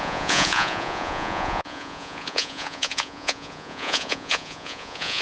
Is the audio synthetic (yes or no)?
yes